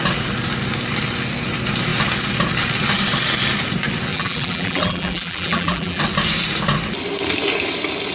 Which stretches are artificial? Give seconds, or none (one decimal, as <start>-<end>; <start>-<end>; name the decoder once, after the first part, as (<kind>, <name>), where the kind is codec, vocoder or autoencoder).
4.1-6.0 (vocoder, BigVGAN v2)